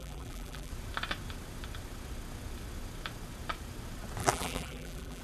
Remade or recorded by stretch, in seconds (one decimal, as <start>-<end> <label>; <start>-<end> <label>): 0.0-0.7 remade; 0.7-4.2 recorded; 4.2-5.2 remade